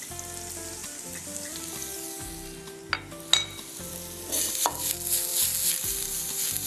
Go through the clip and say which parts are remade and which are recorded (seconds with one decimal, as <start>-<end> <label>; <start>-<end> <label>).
0.0-6.7 recorded